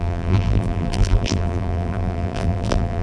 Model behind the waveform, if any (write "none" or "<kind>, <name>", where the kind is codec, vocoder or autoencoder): vocoder, BigVGAN v2